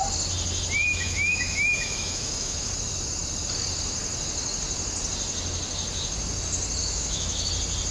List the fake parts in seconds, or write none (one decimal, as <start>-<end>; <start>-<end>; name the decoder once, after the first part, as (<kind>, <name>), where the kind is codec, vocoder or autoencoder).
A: 0.9-2.7 (autoencoder, DAC-VAE); 6.8-7.5